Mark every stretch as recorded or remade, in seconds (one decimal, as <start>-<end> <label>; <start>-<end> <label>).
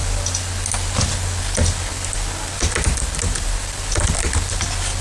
0.0-5.0 recorded